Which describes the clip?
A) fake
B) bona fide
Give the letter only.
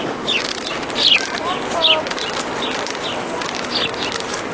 B